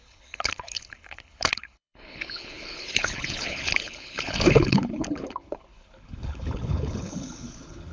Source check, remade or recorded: remade